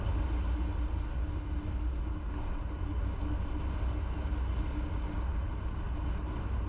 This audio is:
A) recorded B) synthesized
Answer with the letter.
A